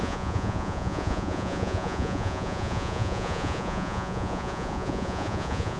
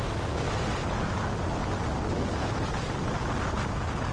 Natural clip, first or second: second